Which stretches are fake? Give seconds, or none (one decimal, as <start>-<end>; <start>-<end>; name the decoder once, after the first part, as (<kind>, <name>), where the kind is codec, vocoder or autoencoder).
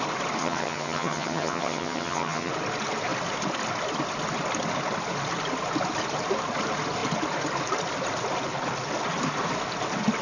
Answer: 0.4-2.5 (vocoder, HiFi-GAN)